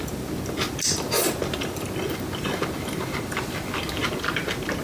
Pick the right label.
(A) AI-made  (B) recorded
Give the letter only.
B